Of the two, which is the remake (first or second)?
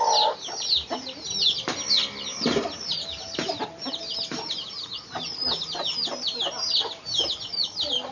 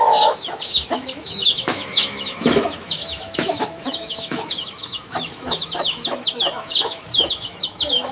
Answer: second